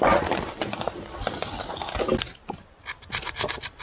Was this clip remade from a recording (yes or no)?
no